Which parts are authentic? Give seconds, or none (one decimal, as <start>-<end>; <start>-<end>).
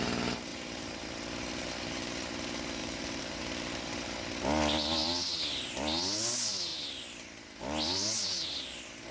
0.0-0.5; 1.1-2.8; 3.4-9.1